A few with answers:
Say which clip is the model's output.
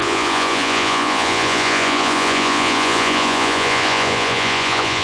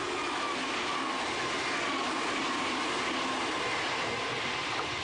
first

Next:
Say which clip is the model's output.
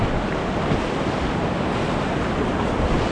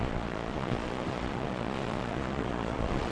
second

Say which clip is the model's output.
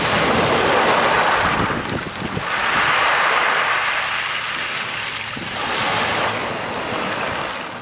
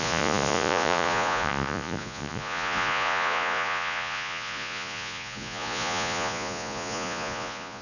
second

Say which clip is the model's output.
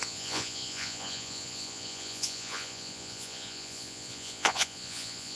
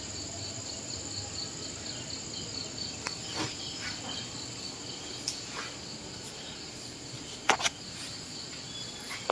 first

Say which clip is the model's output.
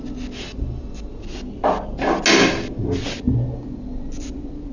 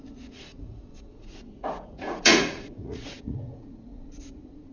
second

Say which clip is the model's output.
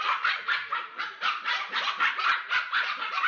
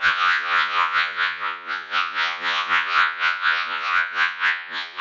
second